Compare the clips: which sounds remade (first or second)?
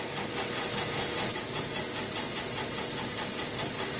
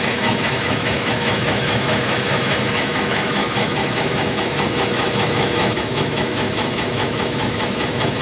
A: second